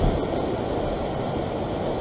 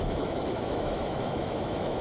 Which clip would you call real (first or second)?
first